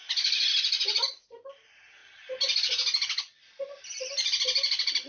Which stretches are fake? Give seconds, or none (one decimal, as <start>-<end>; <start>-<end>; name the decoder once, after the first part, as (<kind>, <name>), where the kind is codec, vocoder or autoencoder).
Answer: none